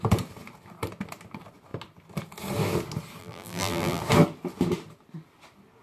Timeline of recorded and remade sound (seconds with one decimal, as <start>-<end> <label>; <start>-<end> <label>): 0.0-3.2 recorded; 3.2-4.0 remade; 4.0-5.8 recorded